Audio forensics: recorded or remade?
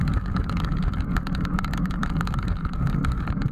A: remade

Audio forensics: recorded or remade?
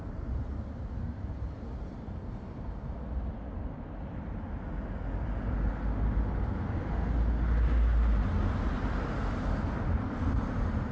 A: recorded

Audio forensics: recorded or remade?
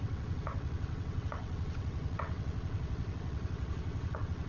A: remade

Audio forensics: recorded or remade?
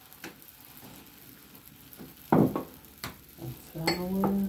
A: recorded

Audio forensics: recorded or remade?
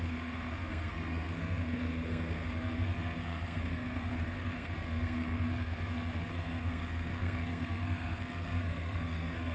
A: remade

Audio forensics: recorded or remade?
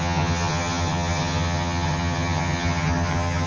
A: remade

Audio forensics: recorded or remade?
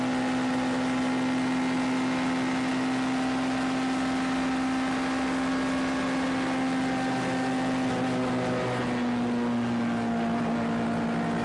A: recorded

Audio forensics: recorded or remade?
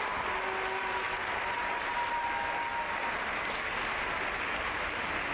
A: recorded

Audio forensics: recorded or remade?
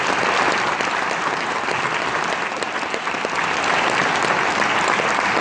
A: recorded